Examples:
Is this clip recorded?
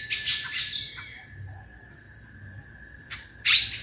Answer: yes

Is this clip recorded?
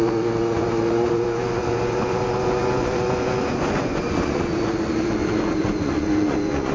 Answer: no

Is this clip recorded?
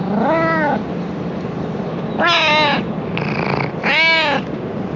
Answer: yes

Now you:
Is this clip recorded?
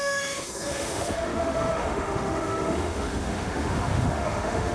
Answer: no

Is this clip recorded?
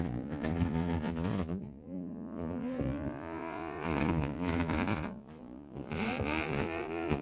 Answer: no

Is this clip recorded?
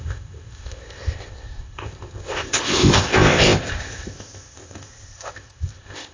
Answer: no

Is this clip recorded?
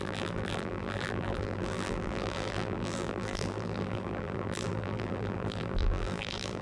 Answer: no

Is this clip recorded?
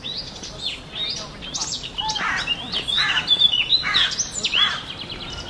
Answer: yes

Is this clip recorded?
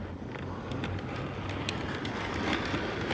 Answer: yes